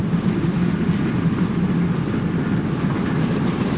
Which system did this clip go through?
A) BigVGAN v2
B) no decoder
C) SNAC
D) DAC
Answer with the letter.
B